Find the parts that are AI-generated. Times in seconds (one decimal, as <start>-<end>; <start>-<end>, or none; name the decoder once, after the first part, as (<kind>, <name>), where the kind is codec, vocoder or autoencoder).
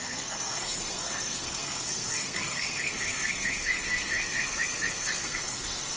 0.0-6.0 (codec, SNAC)